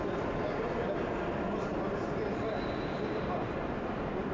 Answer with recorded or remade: recorded